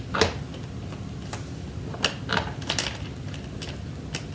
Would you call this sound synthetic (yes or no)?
no